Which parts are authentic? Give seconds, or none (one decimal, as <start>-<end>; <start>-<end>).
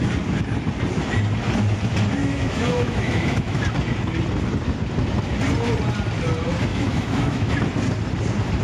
0.0-2.2; 3.6-6.7; 7.5-8.6